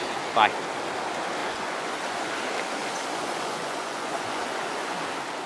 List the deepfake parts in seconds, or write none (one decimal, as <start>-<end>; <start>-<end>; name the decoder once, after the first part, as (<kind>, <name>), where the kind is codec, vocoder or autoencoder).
1.4-2.3 (vocoder, Vocos); 2.8-5.0